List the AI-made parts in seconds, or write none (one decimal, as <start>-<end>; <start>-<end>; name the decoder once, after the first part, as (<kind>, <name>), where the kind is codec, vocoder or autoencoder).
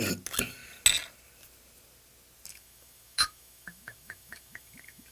2.5-5.1 (autoencoder, DAC-VAE)